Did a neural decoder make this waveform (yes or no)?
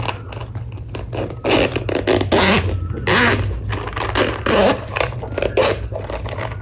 no